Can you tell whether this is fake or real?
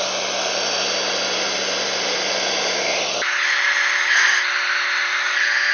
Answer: real